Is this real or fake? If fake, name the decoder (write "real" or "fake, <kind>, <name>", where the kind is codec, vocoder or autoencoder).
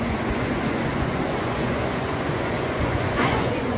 fake, vocoder, Vocos